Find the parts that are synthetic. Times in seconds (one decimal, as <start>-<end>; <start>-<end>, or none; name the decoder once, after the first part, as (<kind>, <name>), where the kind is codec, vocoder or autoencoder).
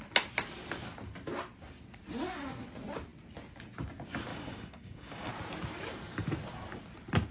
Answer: 4.3-5.3 (codec, DAC)